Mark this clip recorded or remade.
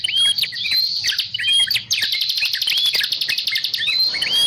remade